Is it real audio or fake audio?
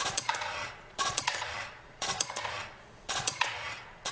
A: fake